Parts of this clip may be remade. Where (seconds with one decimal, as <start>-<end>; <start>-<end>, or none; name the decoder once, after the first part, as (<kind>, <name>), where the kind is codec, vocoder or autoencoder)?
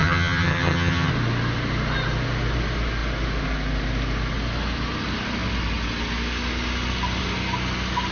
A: 0.0-1.1 (vocoder, HiFi-GAN)